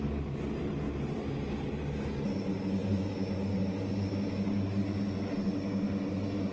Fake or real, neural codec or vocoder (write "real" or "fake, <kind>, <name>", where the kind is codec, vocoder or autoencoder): real